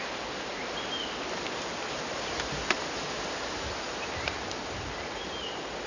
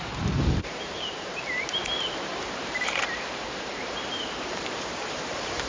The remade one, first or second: second